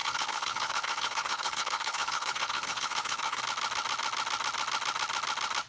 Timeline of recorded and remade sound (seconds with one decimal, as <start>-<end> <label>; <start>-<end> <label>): 0.0-3.4 remade; 3.4-5.7 recorded